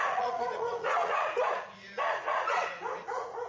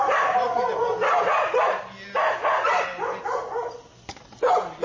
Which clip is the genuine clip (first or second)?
second